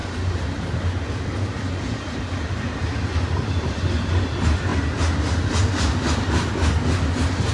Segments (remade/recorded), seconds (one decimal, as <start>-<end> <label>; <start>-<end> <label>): 0.0-7.5 recorded